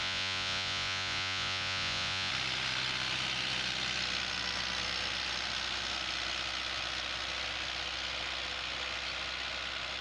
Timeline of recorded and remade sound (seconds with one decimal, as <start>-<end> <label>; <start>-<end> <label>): 0.0-2.3 remade; 2.3-10.0 recorded